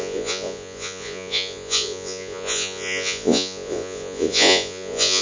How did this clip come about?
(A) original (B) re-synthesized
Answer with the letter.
B